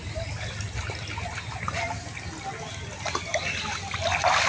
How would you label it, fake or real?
real